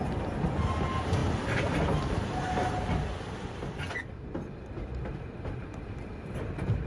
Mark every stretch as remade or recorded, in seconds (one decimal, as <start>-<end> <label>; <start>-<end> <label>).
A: 0.0-6.9 recorded